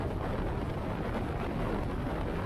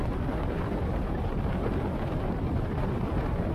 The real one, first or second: first